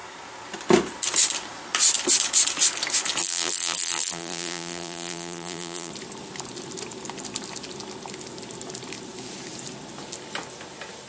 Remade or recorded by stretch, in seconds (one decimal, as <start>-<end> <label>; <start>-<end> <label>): 0.0-3.2 recorded; 3.2-5.9 remade; 5.9-11.1 recorded